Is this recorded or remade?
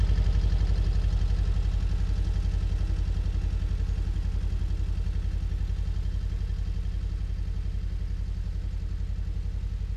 recorded